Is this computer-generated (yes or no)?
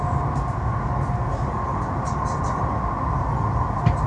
no